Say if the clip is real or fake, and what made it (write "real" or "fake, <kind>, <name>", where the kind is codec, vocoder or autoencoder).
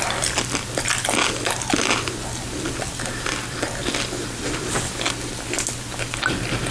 real